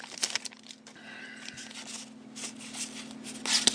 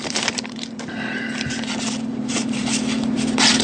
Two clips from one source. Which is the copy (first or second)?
second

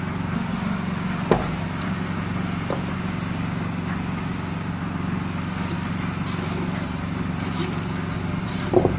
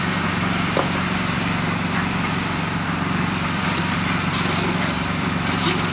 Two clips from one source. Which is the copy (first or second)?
second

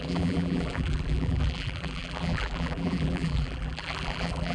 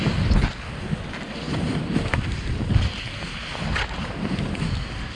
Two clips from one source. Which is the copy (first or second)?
first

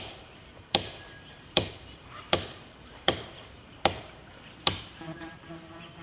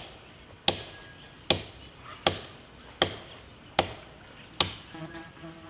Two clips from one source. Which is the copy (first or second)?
first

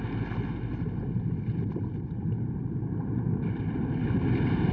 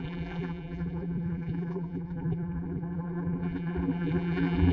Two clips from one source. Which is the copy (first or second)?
second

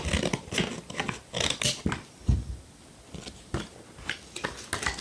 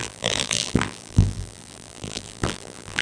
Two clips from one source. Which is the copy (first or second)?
second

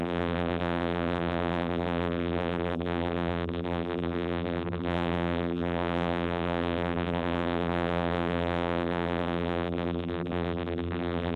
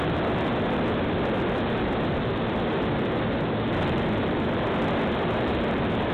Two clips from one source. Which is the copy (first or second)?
first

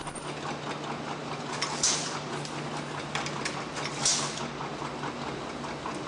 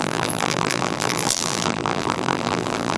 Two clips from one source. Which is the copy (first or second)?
second